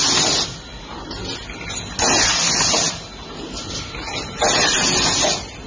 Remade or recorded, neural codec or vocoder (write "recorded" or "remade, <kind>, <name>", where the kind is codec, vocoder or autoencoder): recorded